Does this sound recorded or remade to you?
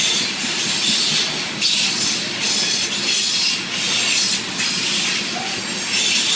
recorded